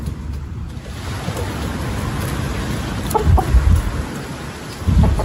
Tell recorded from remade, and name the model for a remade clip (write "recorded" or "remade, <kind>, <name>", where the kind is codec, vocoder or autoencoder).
recorded